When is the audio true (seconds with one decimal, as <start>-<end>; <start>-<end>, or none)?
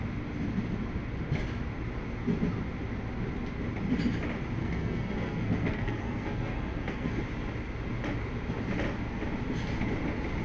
0.0-4.6; 7.2-10.4